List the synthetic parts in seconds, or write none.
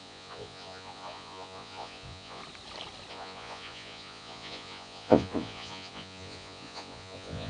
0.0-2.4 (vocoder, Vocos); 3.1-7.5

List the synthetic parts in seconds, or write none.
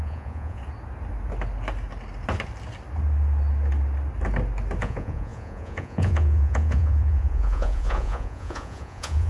0.0-0.6 (vocoder, Vocos); 4.8-9.3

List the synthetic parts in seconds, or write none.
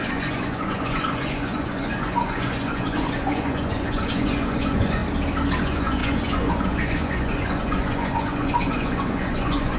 0.0-5.0 (vocoder, Vocos); 5.6-9.8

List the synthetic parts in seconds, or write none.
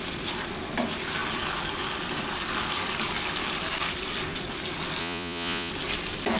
5.0-5.7 (vocoder, Vocos)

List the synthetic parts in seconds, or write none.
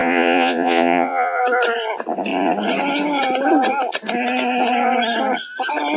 0.0-1.4 (vocoder, Vocos)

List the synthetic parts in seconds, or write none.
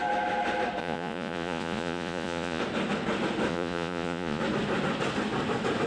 0.8-2.6 (vocoder, Vocos); 3.5-4.4